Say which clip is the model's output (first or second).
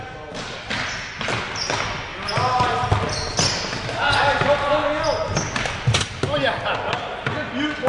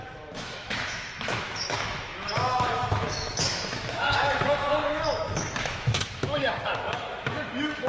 second